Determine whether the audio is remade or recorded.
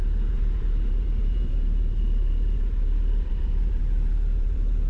remade